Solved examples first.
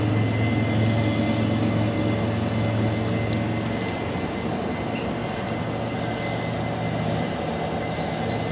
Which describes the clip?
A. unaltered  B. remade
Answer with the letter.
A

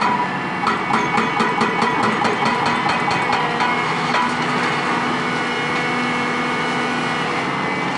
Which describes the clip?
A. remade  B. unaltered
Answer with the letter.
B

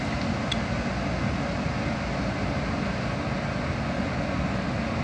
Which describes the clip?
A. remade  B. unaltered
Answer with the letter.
B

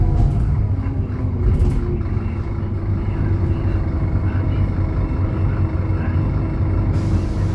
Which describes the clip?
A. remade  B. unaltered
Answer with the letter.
B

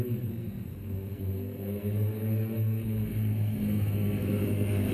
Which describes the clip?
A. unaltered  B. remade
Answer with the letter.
B